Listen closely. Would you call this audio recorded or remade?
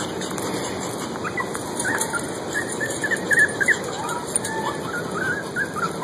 recorded